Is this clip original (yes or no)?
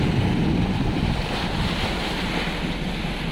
yes